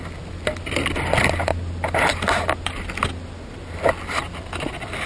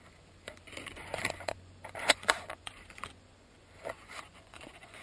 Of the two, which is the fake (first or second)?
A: second